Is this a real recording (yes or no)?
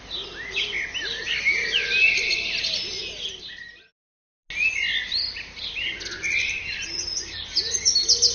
yes